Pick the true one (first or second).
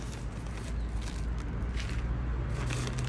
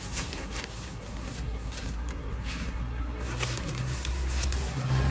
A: first